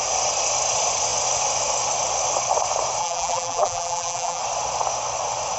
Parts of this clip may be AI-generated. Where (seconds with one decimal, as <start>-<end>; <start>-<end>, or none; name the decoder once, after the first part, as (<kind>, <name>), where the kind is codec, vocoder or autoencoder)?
3.0-4.4 (vocoder, BigVGAN v2)